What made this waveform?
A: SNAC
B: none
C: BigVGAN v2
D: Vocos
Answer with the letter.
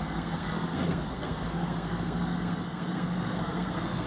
A